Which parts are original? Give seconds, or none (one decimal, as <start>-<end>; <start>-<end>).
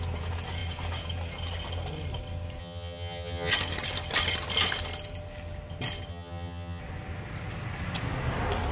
0.0-2.6; 3.5-6.1; 6.8-8.7